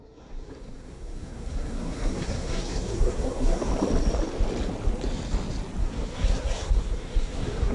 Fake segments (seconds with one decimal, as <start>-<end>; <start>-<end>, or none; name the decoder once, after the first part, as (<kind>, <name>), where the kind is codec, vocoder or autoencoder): 0.0-3.7 (codec, SNAC); 5.8-7.7